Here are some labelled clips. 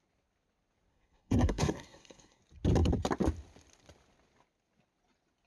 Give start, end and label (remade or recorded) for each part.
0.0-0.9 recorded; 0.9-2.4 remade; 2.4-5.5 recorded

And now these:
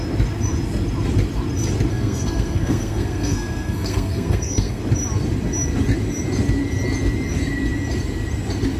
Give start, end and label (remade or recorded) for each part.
0.0-1.9 recorded; 1.9-4.8 remade; 4.8-8.8 recorded